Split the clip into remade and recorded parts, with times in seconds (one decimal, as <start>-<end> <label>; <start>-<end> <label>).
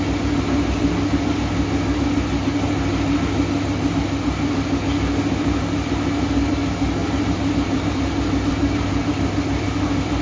0.0-7.0 recorded; 7.0-10.2 remade